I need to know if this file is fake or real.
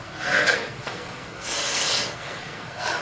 fake